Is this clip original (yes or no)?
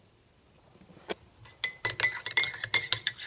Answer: yes